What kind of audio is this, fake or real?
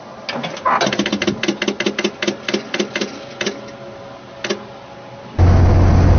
real